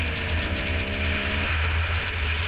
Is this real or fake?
real